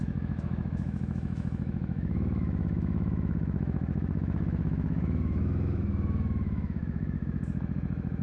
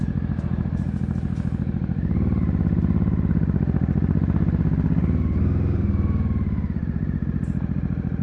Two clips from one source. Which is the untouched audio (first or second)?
second